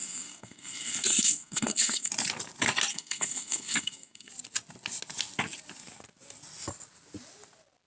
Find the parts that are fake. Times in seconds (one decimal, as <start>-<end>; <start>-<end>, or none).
0.0-2.1; 2.9-4.3